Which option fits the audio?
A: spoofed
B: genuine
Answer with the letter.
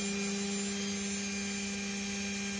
B